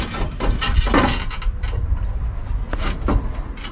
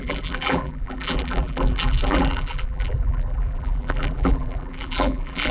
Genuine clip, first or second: first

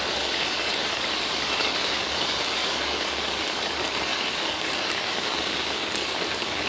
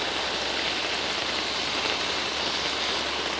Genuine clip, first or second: second